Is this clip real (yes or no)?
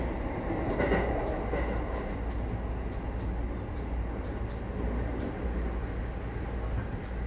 yes